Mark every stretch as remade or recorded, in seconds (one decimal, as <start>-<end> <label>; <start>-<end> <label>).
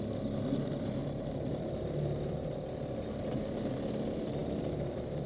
0.0-1.0 recorded; 1.0-3.3 remade; 3.3-5.3 recorded